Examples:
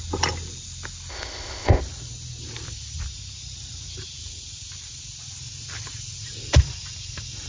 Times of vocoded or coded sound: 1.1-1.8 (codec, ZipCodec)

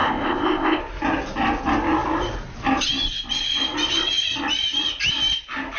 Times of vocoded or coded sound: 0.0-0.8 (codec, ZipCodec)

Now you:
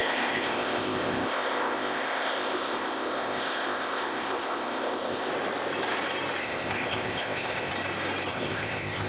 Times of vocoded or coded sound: 0.0-5.3 (codec, ZipCodec); 6.4-7.7; 8.3-9.1

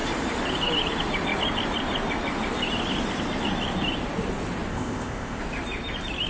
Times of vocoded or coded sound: 4.7-5.4 (codec, ZipCodec)